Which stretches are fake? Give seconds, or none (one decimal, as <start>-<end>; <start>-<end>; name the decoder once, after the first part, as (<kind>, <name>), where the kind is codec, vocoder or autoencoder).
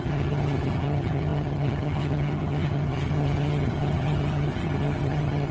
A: 0.0-5.5 (vocoder, HiFi-GAN)